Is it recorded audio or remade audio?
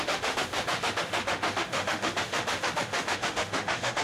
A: remade